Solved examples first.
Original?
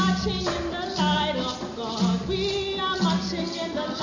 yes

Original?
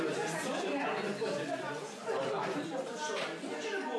yes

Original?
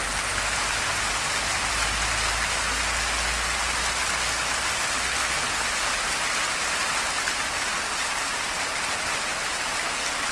yes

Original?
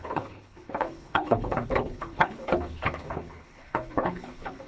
no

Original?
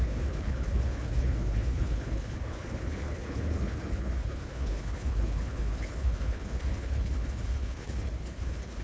no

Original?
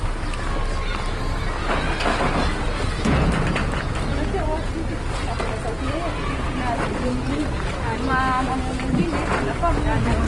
yes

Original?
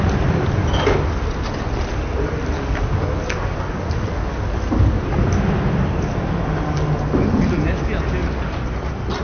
yes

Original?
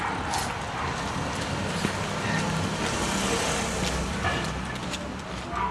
yes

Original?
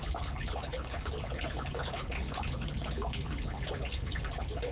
no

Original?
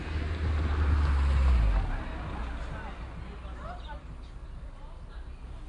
yes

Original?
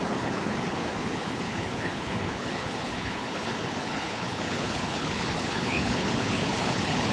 no